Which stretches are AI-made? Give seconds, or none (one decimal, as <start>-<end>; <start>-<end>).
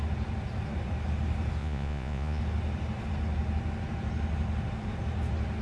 1.6-2.4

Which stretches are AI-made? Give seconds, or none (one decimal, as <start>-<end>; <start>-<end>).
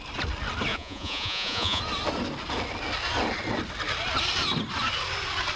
0.7-1.8